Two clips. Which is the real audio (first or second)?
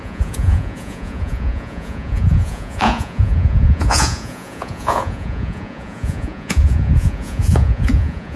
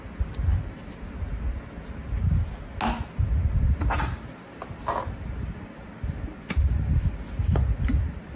second